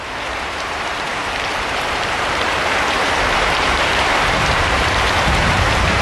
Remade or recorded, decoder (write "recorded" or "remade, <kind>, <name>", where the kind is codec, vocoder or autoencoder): remade, vocoder, BigVGAN v2